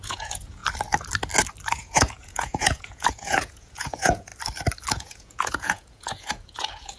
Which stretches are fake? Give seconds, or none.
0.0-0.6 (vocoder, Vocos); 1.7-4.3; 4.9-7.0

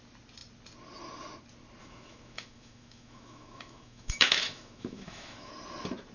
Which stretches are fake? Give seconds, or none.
1.8-5.5 (autoencoder, DAC-VAE)

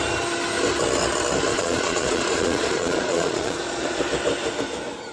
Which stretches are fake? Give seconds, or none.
1.5-4.0 (vocoder, Vocos)

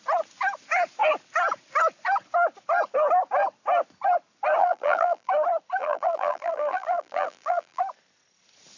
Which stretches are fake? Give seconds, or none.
4.6-5.3 (vocoder, BigVGAN v2); 5.8-7.8

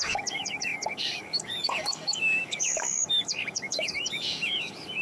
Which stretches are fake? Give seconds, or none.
0.0-5.0 (codec, DAC)

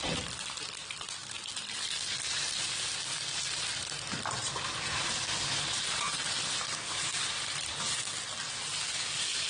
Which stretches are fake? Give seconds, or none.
none